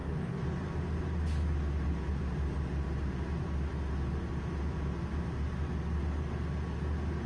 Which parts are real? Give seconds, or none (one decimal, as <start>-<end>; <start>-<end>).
0.0-7.3